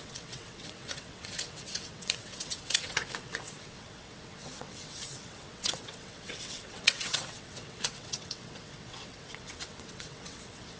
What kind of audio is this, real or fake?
fake